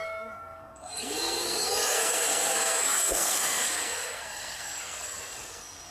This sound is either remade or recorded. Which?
remade